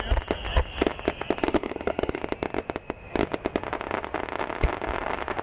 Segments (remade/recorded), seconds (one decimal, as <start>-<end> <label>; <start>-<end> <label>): 0.0-1.4 recorded; 1.4-2.2 remade; 2.2-5.4 recorded